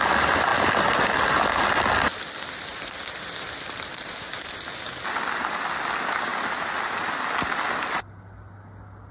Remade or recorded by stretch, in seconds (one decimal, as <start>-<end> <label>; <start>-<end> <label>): 0.0-9.1 recorded